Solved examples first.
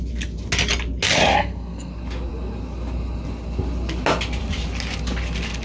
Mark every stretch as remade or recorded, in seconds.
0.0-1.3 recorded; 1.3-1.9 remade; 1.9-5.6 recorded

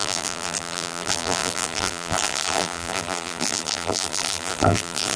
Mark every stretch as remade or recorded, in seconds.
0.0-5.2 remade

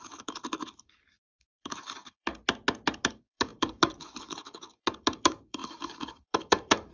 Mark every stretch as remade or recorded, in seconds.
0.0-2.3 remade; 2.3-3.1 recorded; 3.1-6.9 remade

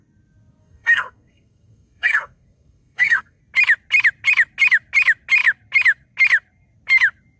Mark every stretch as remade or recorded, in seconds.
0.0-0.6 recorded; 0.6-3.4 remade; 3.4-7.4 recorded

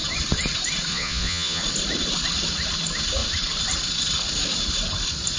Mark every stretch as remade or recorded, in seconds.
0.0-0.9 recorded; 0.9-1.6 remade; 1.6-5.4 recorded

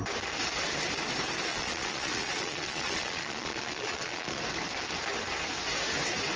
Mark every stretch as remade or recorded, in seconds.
0.0-1.5 recorded; 1.5-4.4 remade; 4.4-6.4 recorded